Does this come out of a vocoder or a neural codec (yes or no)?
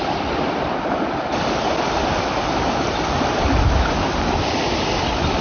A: no